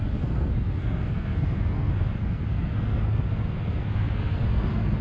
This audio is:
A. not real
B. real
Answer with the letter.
A